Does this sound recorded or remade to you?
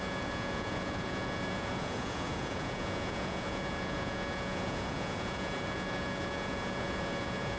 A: remade